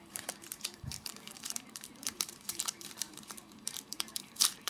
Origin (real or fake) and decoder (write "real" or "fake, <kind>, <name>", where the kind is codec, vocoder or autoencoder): fake, vocoder, BigVGAN v2